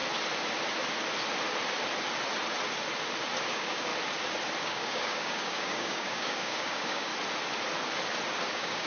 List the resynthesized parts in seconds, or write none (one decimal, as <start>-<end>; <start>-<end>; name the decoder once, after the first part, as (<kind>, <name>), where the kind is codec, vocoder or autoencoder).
3.5-3.9 (codec, DAC); 4.6-7.1; 8.5-8.9